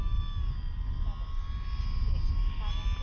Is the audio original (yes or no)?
yes